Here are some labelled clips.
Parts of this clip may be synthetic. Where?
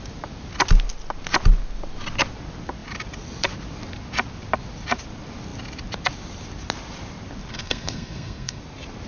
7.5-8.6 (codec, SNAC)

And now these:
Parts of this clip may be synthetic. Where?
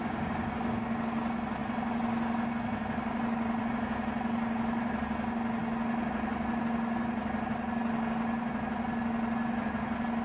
none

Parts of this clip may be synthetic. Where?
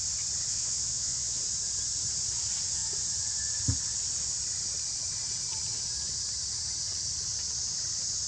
0.5-1.4 (vocoder, Vocos)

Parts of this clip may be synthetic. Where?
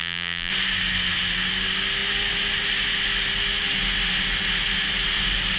0.0-0.5 (vocoder, BigVGAN v2)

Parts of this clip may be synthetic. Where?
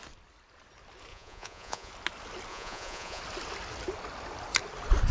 1.1-1.9 (vocoder, Vocos); 2.5-3.2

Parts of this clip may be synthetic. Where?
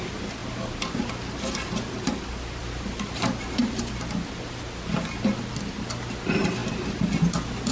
2.6-3.9 (vocoder, BigVGAN v2)